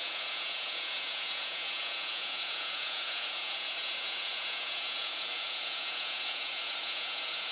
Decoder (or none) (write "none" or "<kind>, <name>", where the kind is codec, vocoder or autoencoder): vocoder, Vocos